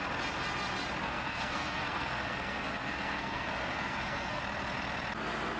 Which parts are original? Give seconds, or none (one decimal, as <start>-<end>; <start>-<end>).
0.0-1.0; 4.4-5.6